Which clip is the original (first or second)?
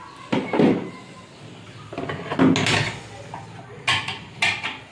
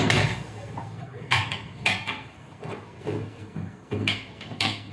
first